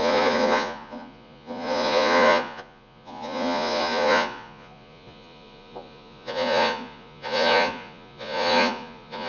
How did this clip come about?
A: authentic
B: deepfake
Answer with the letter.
B